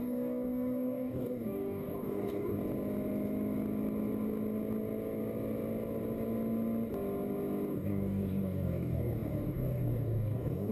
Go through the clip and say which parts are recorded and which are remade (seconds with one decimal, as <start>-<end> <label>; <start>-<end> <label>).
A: 0.0-2.6 remade; 2.6-7.7 recorded; 7.7-10.7 remade